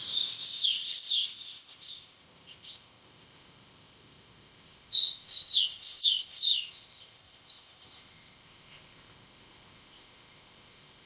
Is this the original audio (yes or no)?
no